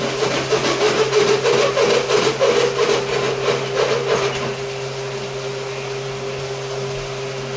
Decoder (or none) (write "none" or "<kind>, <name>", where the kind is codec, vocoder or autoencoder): none